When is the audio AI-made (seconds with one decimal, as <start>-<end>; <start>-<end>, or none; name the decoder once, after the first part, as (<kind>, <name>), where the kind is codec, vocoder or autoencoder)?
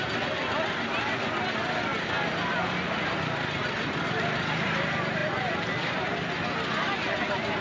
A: none